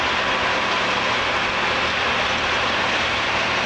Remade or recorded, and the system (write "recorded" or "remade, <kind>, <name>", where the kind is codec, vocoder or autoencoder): recorded